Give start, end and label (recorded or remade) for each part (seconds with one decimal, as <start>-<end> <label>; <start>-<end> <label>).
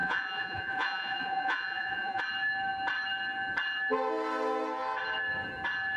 0.0-2.2 remade; 2.2-6.0 recorded